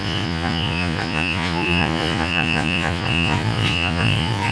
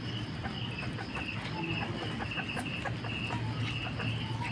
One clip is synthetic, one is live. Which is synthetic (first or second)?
first